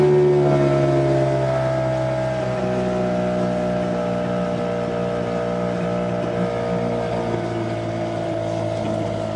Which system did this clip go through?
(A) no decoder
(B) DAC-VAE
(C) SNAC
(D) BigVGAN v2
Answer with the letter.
A